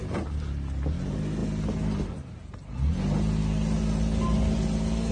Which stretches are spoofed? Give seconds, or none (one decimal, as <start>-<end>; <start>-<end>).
none